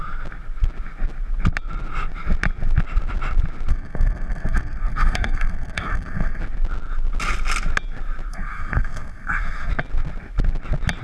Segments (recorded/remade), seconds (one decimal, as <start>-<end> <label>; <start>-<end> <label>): 0.0-3.7 recorded; 3.7-6.4 remade; 6.4-8.3 recorded; 8.3-9.7 remade; 9.7-11.0 recorded